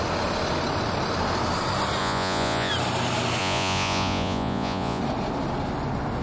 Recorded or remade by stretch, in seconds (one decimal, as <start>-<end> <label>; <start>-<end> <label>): 0.0-2.0 recorded; 2.0-2.7 remade; 2.7-3.4 recorded; 3.4-5.0 remade; 5.0-6.2 recorded